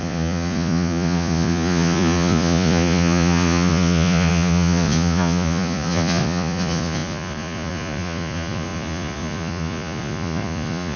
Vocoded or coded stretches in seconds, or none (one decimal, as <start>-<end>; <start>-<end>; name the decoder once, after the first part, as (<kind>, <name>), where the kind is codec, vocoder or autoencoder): 0.0-11.0 (vocoder, Vocos)